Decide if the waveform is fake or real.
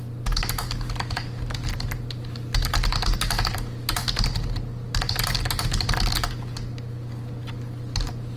real